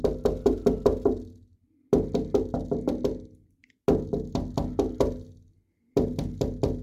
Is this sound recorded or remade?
recorded